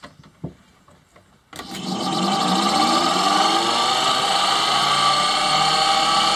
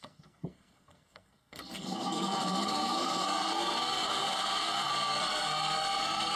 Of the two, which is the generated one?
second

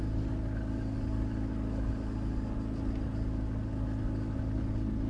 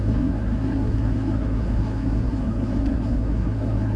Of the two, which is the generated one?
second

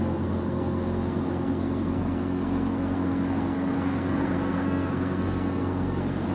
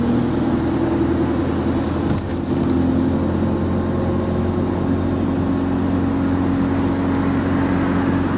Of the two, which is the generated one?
first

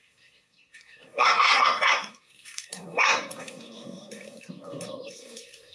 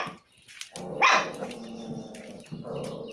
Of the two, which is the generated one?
first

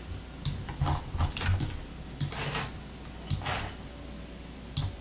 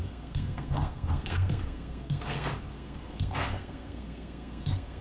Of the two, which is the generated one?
second